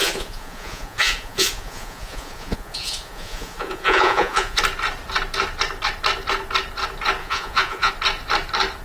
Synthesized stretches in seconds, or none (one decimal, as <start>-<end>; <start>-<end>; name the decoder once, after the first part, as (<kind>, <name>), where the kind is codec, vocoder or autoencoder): 0.0-4.6 (vocoder, Vocos); 7.2-7.9